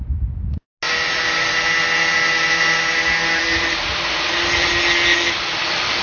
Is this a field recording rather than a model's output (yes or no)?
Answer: yes